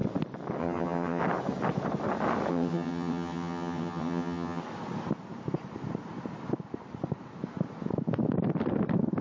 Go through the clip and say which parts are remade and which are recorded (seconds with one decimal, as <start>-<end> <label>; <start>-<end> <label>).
0.0-0.6 recorded; 0.6-1.2 remade; 1.2-2.5 recorded; 2.5-4.6 remade; 4.6-9.2 recorded